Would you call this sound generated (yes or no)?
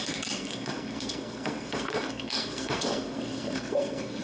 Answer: yes